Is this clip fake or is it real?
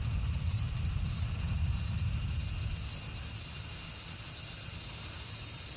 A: real